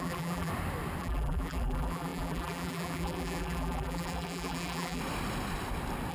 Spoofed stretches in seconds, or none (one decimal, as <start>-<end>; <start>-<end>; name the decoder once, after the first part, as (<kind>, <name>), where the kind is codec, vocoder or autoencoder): 0.0-0.5 (vocoder, BigVGAN v2); 1.0-5.0